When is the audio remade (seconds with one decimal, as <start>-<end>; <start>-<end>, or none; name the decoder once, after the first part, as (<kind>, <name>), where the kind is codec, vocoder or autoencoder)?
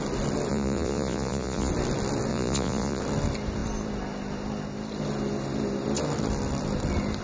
0.5-1.7 (vocoder, Vocos); 2.3-3.0